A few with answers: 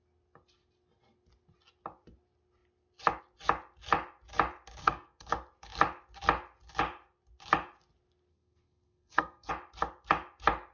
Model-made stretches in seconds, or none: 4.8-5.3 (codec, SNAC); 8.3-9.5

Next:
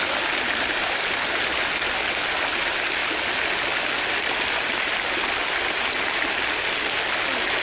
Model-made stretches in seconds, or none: none

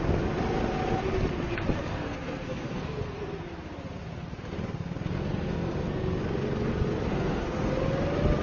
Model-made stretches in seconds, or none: 1.9-3.4 (codec, SNAC); 5.2-6.2; 7.1-7.7